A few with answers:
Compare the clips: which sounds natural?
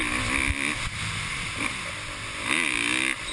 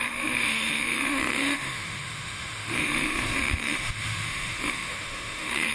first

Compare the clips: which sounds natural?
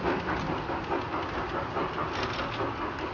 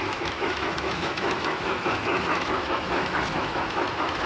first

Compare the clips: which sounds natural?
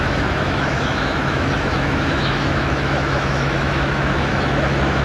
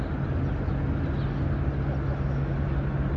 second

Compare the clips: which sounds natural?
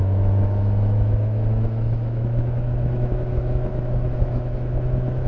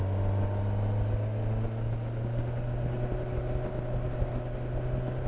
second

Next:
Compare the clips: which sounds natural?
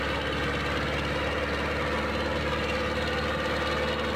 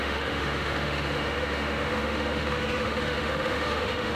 first